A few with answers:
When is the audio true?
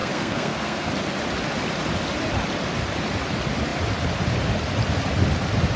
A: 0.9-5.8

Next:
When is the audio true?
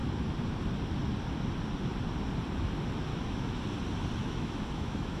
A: 0.0-3.1; 3.6-4.2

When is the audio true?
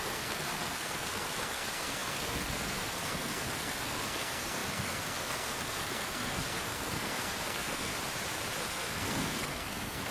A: 7.9-8.7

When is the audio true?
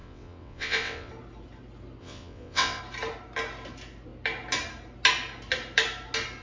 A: 1.1-2.0; 2.8-6.4